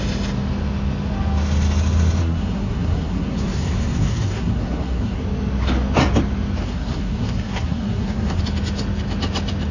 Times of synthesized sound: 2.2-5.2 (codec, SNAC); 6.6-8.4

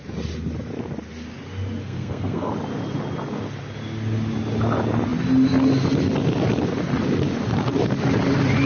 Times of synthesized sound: 1.8-2.5 (codec, SNAC)

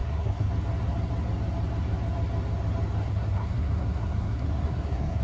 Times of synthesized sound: 0.0-0.5 (codec, SNAC); 3.0-5.2

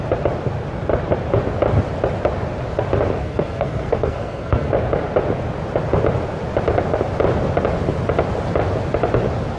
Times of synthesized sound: 3.2-4.7 (codec, SNAC)

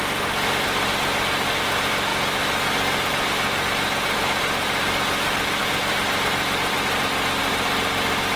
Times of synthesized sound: none

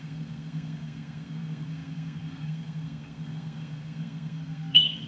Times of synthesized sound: 0.0-5.1 (codec, SNAC)

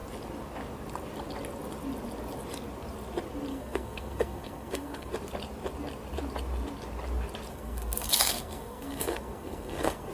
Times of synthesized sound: 3.5-5.1 (codec, SNAC); 7.5-10.1

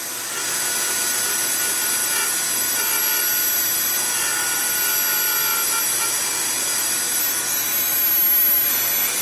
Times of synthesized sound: none